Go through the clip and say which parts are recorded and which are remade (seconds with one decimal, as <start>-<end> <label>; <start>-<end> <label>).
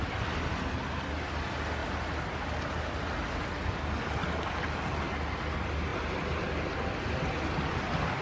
0.0-8.2 recorded